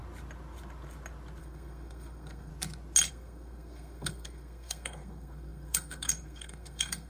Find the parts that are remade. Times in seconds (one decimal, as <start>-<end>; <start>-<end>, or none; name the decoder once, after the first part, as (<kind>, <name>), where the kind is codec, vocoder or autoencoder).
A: 1.4-2.5 (codec, SNAC); 3.1-7.1